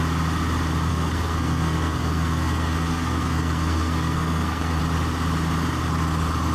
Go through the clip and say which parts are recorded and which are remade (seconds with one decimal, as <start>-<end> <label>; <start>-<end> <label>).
0.0-0.9 recorded; 0.9-4.8 remade; 4.8-6.5 recorded